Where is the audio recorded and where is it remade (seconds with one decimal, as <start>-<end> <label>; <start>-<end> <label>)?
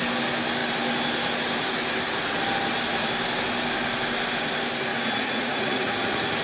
0.0-4.9 recorded; 4.9-6.4 remade